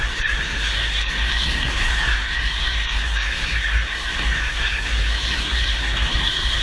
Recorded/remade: remade